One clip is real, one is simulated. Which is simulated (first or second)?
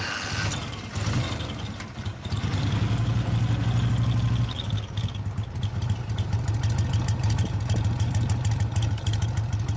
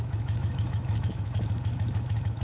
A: second